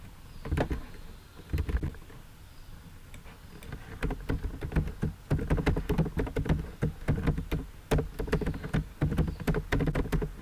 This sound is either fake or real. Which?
real